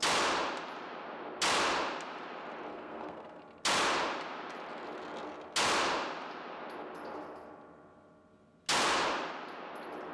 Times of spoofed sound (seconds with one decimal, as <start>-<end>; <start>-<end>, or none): 2.7-3.4